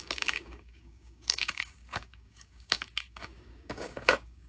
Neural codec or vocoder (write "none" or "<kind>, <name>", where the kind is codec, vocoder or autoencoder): codec, DAC